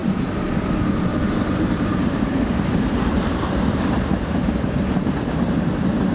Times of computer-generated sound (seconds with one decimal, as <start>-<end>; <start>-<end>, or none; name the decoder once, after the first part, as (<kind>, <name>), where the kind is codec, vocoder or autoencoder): 0.0-3.4 (vocoder, BigVGAN v2); 4.3-5.1

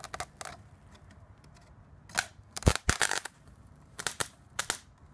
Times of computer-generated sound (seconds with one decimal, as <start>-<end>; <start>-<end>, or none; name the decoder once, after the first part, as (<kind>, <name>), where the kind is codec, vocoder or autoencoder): 2.3-4.6 (vocoder, BigVGAN v2)

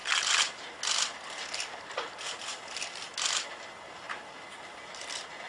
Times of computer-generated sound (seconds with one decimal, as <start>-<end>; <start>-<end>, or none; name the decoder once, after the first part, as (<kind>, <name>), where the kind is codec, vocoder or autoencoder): none

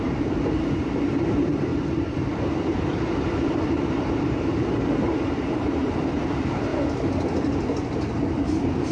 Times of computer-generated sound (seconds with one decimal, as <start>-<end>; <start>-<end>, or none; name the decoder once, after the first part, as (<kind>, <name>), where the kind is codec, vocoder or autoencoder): 0.0-6.7 (vocoder, BigVGAN v2); 8.3-8.9

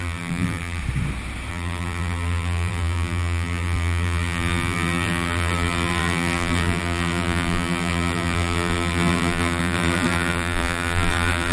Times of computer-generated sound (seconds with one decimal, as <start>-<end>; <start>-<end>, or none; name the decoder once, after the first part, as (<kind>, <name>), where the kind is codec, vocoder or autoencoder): 0.0-0.8 (vocoder, BigVGAN v2); 1.5-11.5

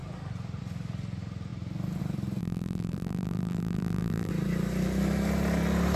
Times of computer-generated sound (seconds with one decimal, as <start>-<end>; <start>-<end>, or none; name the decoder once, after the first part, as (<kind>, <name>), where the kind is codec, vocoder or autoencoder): 2.4-4.3 (vocoder, BigVGAN v2)

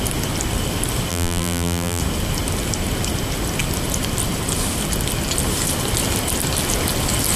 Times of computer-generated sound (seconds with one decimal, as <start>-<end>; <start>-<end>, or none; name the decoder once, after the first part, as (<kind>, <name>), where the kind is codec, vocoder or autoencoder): 1.1-2.0 (vocoder, BigVGAN v2)

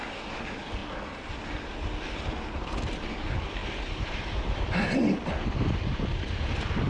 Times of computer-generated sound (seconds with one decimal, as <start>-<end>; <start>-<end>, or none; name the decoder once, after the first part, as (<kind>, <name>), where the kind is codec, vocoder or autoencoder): 3.6-5.3 (vocoder, BigVGAN v2)